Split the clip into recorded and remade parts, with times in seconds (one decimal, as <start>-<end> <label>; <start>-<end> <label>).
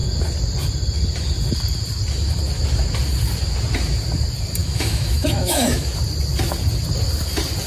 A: 0.0-4.6 recorded; 4.6-5.9 remade; 5.9-7.7 recorded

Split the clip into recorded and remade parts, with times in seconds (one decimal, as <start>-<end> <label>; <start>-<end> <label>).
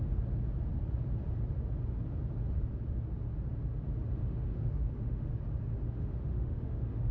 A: 0.0-4.2 recorded; 4.2-5.3 remade; 5.3-5.8 recorded; 5.8-7.1 remade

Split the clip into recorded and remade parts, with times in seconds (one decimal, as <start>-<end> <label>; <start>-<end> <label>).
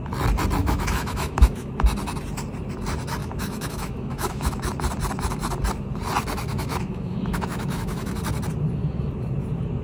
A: 0.0-0.6 recorded; 0.6-1.7 remade; 1.7-3.2 recorded; 3.2-4.7 remade; 4.7-6.5 recorded; 6.5-8.1 remade; 8.1-9.8 recorded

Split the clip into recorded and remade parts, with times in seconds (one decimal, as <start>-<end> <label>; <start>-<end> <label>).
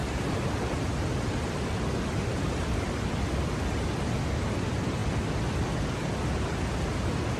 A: 0.0-7.4 recorded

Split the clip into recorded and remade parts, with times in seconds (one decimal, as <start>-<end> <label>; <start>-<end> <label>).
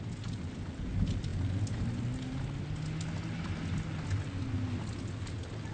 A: 0.0-5.7 recorded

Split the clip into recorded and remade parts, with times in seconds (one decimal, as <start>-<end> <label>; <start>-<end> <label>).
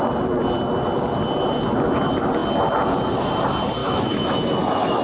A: 0.0-3.8 recorded; 3.8-5.0 remade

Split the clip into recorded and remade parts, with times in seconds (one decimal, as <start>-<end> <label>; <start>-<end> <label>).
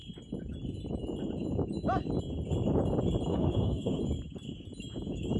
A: 0.0-3.3 recorded; 3.3-4.0 remade; 4.0-5.4 recorded